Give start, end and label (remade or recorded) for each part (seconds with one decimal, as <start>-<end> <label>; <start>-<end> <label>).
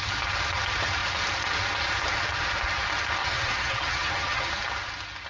0.0-3.2 recorded; 3.2-4.5 remade; 4.5-5.3 recorded